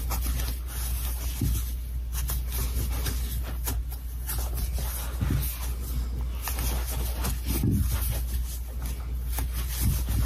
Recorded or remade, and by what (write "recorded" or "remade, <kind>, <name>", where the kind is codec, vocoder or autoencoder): recorded